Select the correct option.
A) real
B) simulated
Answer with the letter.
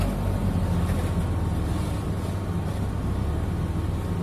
A